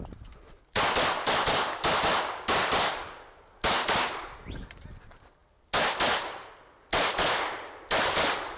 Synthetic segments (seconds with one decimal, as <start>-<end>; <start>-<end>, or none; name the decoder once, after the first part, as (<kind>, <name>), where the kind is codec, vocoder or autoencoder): none

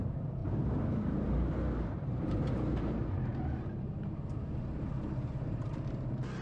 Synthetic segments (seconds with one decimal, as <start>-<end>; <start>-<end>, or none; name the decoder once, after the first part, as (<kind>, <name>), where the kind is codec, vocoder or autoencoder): 0.0-0.4 (vocoder, BigVGAN v2); 0.9-3.3; 4.6-6.4

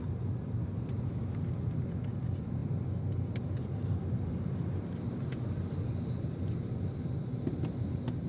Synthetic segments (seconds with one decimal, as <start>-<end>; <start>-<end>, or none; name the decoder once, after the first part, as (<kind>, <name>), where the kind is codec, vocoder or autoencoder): none